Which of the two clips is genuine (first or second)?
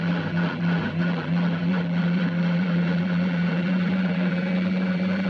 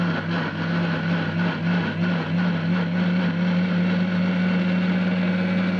second